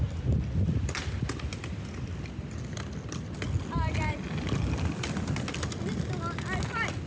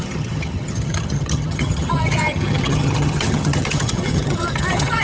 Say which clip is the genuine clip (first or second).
first